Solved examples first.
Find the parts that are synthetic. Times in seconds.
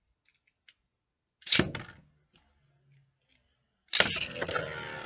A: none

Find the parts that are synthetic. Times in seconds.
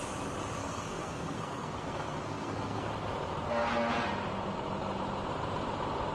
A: 0.6-2.9 (codec, SNAC)